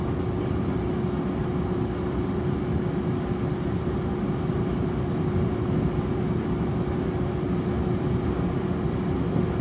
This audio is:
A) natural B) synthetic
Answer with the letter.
A